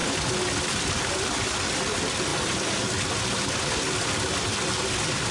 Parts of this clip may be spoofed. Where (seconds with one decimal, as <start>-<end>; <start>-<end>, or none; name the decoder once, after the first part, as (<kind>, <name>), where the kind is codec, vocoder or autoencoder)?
none